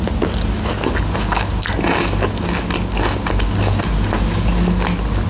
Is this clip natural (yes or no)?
yes